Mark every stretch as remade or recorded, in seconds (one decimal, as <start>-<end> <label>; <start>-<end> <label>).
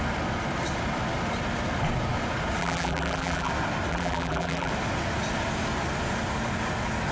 0.0-2.6 recorded; 2.6-3.5 remade; 3.5-3.9 recorded; 3.9-4.7 remade; 4.7-7.1 recorded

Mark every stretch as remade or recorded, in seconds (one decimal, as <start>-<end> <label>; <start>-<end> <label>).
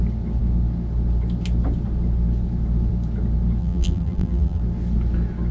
0.0-3.6 recorded; 3.6-4.6 remade; 4.6-5.5 recorded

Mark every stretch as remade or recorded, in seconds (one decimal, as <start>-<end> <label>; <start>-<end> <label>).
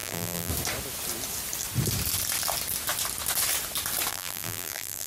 0.0-0.5 remade; 0.5-4.1 recorded; 4.1-5.1 remade